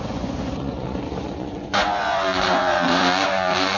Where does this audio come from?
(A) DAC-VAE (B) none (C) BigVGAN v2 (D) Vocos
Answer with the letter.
D